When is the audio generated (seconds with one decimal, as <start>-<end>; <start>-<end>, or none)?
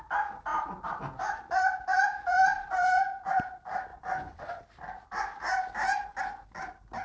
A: 3.9-4.6